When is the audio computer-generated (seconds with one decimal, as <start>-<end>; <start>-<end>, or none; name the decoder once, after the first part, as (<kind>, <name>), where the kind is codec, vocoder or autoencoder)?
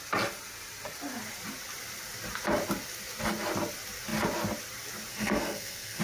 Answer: 5.1-6.0 (codec, SNAC)